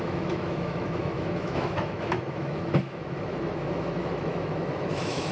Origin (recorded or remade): remade